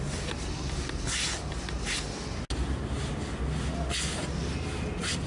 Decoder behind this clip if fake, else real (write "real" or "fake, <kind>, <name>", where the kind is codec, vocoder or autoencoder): real